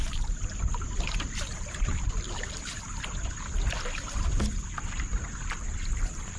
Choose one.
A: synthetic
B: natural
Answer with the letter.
A